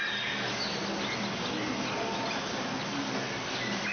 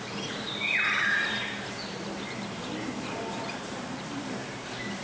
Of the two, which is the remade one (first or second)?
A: second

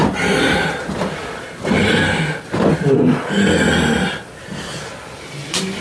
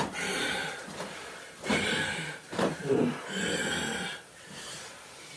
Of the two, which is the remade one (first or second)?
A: second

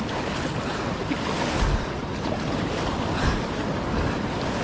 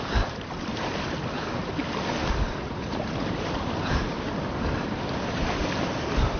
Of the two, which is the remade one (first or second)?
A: second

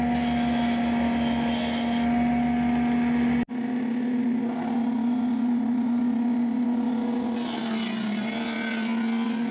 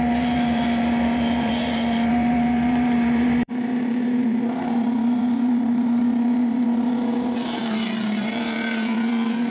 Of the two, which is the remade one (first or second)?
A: second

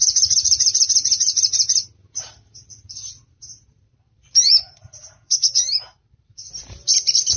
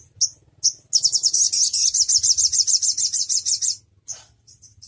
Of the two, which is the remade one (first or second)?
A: first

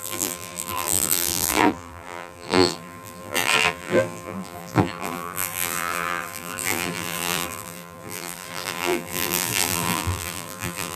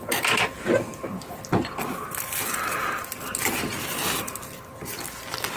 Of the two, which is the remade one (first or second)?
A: first